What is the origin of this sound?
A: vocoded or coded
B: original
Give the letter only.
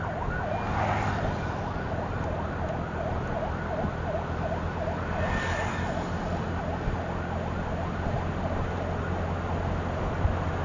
B